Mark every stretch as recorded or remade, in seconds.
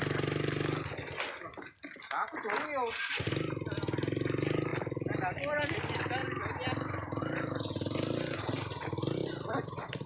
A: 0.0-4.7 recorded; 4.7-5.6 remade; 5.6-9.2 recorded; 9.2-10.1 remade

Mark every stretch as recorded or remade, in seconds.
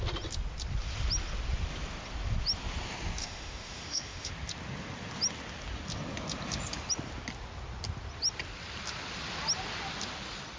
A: 0.0-3.2 recorded; 3.2-4.3 remade; 4.3-10.6 recorded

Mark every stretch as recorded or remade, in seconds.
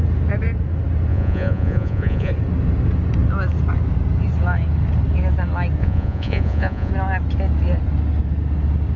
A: 0.0-1.1 recorded; 1.1-2.3 remade; 2.3-5.8 recorded; 5.8-6.9 remade; 6.9-9.0 recorded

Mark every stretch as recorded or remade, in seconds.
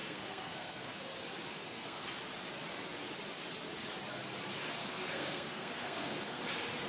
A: 0.0-1.0 remade; 1.0-1.5 recorded; 1.5-2.0 remade; 2.0-4.8 recorded; 4.8-6.4 remade; 6.4-6.9 recorded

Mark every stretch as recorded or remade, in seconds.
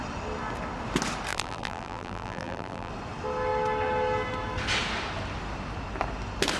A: 0.0-1.3 recorded; 1.3-2.9 remade; 2.9-6.6 recorded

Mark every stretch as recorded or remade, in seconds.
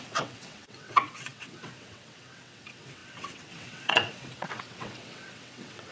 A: 0.0-5.9 remade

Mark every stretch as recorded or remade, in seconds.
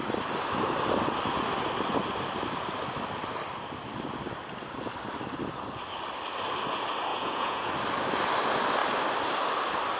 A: 0.0-7.1 recorded; 7.1-7.7 remade; 7.7-10.0 recorded